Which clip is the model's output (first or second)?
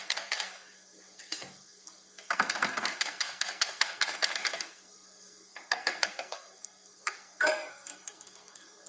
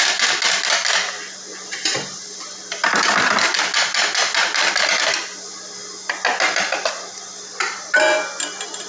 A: first